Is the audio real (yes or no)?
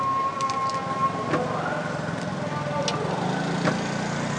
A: yes